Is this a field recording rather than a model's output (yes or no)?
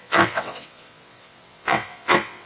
no